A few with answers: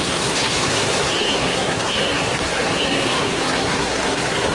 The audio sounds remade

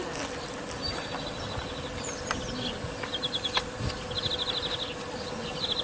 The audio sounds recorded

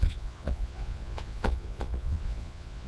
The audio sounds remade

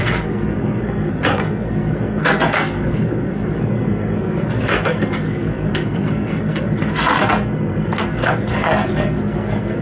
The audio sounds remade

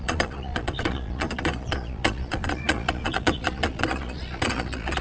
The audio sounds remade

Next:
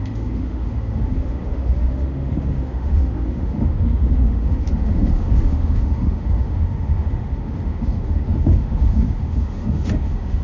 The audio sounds remade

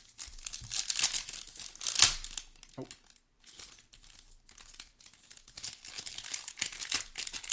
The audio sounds recorded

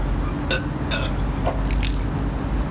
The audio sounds recorded